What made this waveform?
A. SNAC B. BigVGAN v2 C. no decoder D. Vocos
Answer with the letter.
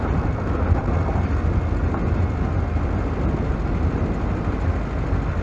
C